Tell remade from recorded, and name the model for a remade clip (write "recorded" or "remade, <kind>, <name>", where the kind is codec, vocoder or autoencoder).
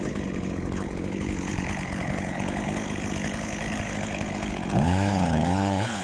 remade, codec, HILCodec